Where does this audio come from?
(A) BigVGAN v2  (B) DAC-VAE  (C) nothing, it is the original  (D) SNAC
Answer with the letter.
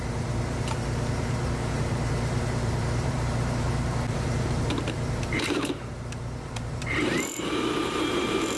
A